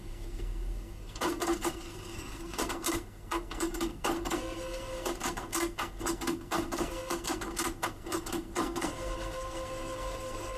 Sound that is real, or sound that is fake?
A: fake